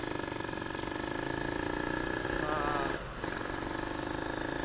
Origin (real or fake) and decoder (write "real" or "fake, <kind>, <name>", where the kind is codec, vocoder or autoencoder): real